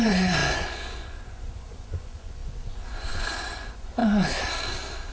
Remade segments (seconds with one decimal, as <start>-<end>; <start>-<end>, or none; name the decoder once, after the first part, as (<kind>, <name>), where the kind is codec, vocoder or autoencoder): 0.0-4.0 (vocoder, Vocos)